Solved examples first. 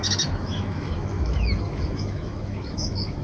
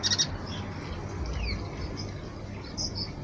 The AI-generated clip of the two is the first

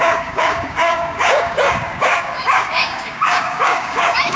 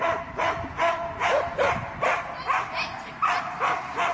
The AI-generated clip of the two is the first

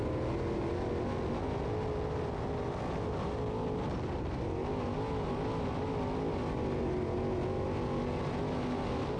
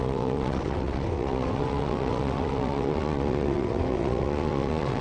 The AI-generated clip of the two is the second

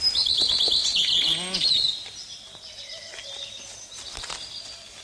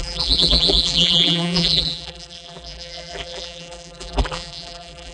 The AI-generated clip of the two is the second